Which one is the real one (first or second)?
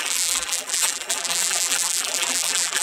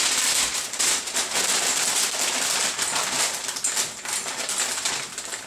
second